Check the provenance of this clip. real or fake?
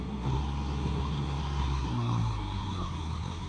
fake